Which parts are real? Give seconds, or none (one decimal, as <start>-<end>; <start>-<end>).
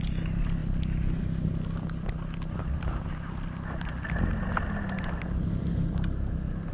0.0-6.7